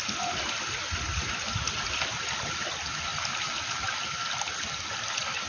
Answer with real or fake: real